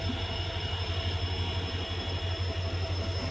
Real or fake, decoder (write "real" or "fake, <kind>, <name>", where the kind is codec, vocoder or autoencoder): real